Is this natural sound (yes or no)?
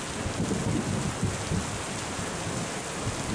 yes